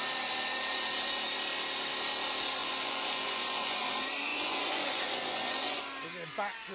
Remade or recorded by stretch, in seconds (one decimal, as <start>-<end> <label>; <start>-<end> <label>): 0.0-2.6 recorded; 2.6-3.8 remade; 3.8-4.3 recorded; 4.3-5.8 remade; 5.8-6.7 recorded